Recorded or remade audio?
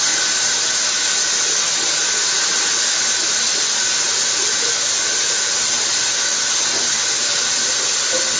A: recorded